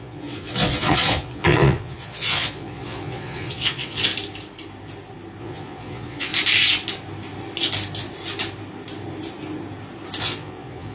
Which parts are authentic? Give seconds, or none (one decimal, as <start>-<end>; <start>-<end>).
4.1-5.4; 6.3-10.2